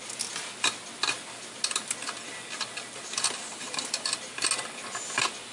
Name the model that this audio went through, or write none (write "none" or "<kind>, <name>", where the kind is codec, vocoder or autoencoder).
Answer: none